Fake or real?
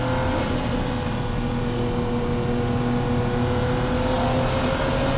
real